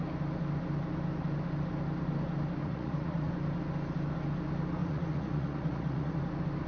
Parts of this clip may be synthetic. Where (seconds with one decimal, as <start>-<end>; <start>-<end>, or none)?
2.6-3.3; 4.8-6.2